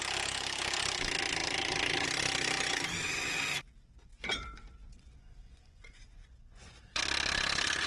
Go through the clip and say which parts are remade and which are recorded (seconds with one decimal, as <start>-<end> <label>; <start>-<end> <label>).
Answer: 0.0-4.1 recorded; 4.1-7.0 remade; 7.0-7.9 recorded